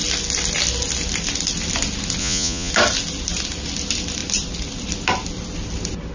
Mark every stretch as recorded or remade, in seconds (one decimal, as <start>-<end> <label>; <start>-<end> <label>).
0.0-2.2 recorded; 2.2-2.7 remade; 2.7-6.1 recorded